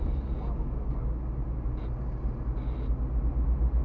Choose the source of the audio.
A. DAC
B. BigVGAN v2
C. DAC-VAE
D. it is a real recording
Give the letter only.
D